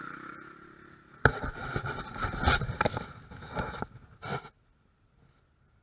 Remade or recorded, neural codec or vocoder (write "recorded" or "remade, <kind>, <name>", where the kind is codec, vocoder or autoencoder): recorded